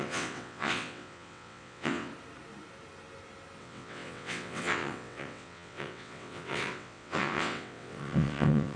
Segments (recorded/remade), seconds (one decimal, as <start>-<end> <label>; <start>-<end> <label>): 0.0-2.1 remade; 2.1-3.6 recorded; 3.6-8.8 remade